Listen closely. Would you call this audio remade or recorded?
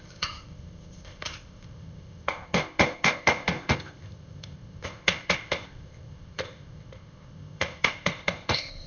remade